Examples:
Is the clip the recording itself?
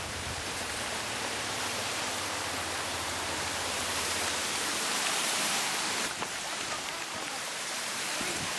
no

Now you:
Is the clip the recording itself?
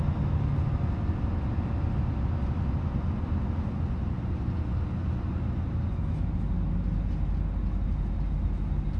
yes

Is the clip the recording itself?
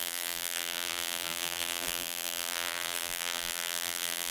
no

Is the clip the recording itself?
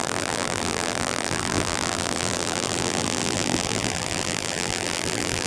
no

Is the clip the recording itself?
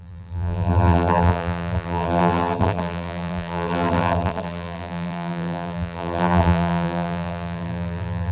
no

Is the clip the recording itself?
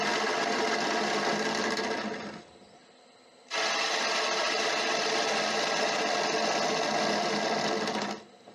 yes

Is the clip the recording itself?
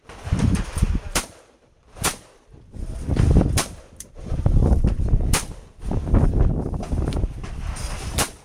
no